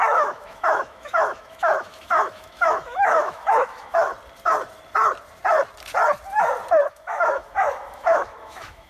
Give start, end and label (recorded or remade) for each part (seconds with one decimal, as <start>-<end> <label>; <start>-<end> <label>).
0.0-4.1 remade; 4.1-6.9 recorded; 6.9-8.9 remade